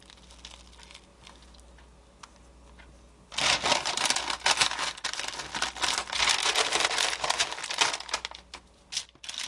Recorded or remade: recorded